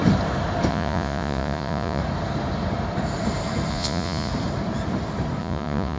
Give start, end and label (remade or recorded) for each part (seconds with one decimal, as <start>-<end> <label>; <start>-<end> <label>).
0.0-0.7 recorded; 0.7-2.0 remade; 2.0-3.7 recorded; 3.7-4.3 remade; 4.3-5.4 recorded; 5.4-6.0 remade